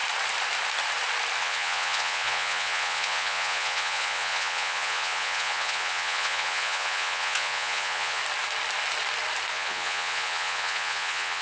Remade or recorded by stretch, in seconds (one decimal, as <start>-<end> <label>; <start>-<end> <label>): 0.0-1.4 recorded; 1.4-8.2 remade; 8.2-9.5 recorded; 9.5-11.4 remade